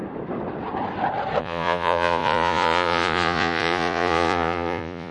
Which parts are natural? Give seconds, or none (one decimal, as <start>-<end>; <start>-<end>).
0.0-1.4